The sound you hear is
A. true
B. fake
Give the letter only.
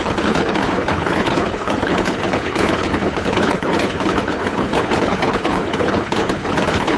B